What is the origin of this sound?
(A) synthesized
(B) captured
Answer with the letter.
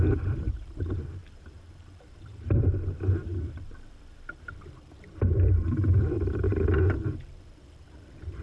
A